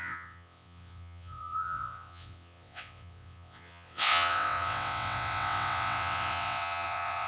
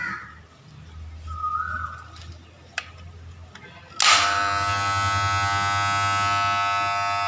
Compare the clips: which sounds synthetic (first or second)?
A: first